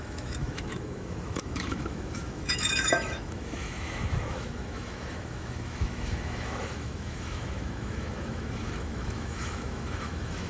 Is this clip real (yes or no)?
no